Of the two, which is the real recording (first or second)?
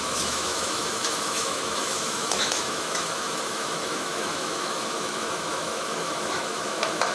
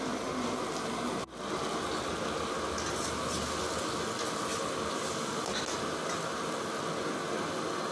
second